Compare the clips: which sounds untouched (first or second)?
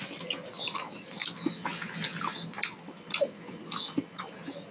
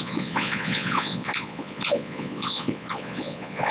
first